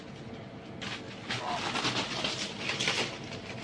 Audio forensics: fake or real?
real